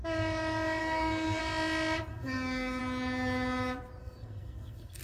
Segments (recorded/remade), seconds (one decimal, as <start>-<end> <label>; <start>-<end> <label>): 0.0-0.8 recorded; 0.8-1.4 remade; 1.4-2.1 recorded; 2.1-2.8 remade; 2.8-4.0 recorded; 4.0-5.0 remade